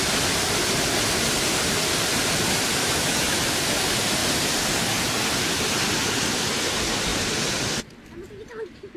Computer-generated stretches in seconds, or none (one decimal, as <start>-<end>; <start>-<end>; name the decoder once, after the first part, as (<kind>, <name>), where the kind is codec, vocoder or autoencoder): 2.8-3.4 (autoencoder, DAC-VAE)